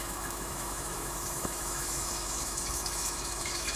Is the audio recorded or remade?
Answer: remade